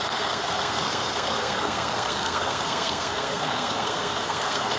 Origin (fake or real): fake